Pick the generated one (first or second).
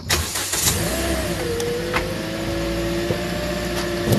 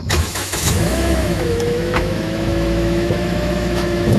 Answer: second